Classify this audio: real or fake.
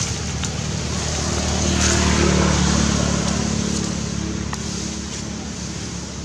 real